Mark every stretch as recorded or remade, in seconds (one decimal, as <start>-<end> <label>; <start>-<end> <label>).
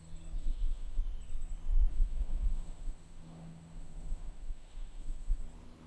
0.0-0.4 recorded; 0.4-1.0 remade; 1.0-1.9 recorded; 1.9-5.4 remade; 5.4-5.9 recorded